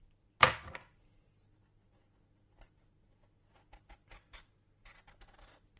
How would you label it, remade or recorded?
recorded